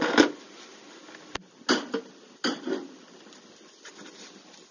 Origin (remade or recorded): recorded